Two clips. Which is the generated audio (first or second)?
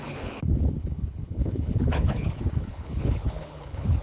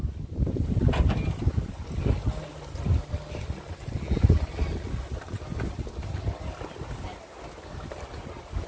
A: first